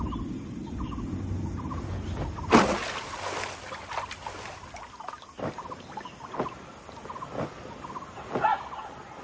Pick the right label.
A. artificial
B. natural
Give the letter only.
B